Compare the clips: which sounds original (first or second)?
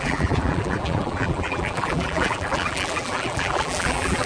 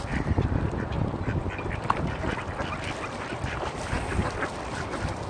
second